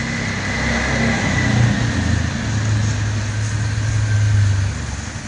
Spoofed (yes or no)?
no